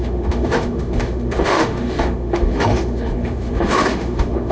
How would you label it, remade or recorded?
remade